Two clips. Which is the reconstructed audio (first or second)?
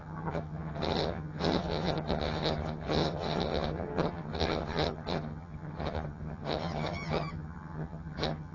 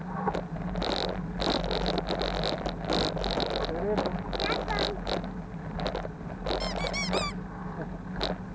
first